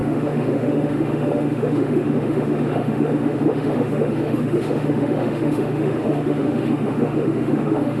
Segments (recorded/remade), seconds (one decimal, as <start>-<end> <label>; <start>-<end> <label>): 0.0-8.0 remade